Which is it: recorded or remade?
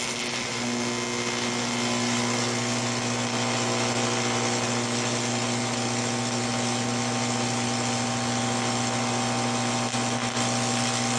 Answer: recorded